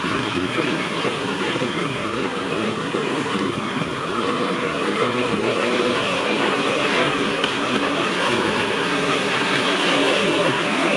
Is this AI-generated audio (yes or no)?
yes